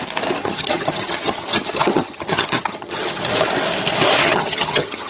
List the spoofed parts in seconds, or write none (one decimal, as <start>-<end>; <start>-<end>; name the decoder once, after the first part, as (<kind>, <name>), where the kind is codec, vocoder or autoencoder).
0.4-3.2 (vocoder, HiFi-GAN); 4.2-5.1